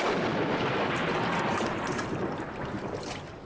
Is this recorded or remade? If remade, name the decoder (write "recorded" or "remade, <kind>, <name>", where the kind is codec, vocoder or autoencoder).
recorded